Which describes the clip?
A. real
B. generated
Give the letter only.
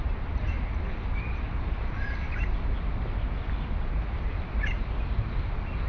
A